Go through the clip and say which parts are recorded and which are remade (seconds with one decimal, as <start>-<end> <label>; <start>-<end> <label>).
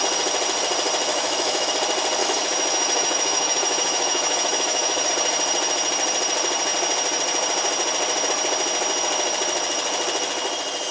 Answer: 0.0-1.1 recorded; 1.1-1.7 remade; 1.7-2.2 recorded; 2.2-5.1 remade; 5.1-10.9 recorded